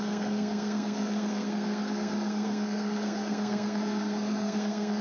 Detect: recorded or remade remade